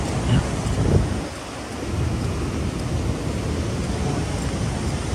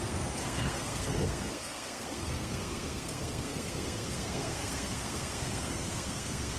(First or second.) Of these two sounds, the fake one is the second